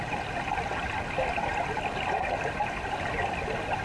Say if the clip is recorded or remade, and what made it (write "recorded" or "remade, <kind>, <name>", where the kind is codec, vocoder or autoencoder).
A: recorded